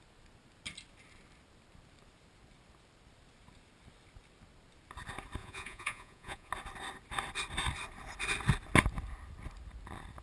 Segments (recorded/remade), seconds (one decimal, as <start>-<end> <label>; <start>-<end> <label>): 0.0-5.4 recorded; 5.4-6.5 remade; 6.5-10.2 recorded